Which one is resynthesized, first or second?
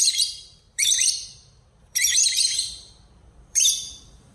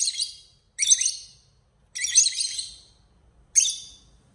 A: first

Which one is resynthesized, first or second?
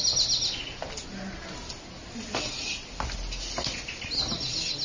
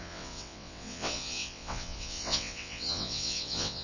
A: second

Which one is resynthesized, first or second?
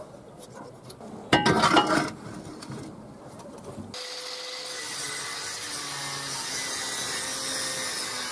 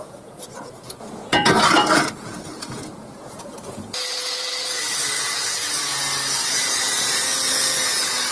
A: second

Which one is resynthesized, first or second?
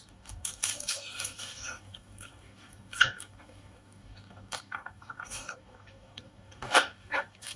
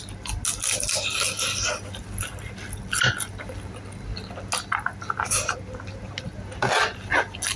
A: first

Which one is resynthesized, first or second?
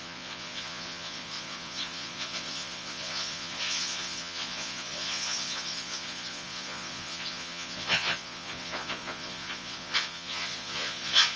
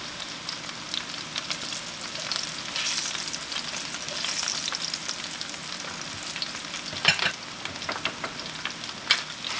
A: first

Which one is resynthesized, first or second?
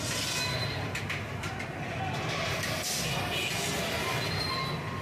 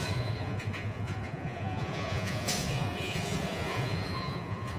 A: second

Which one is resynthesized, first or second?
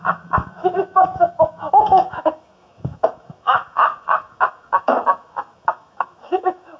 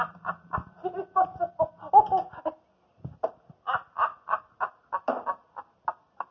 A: first